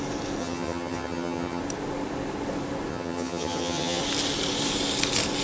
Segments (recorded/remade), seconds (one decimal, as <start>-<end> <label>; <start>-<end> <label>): 0.0-0.4 recorded; 0.4-1.6 remade; 1.6-2.9 recorded; 2.9-4.0 remade; 4.0-5.4 recorded